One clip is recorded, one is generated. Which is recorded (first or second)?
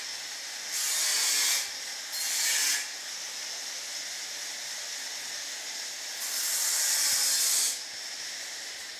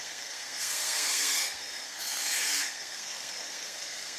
first